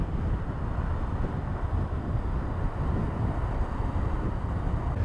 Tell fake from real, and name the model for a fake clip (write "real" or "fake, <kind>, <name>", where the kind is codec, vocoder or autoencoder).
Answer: real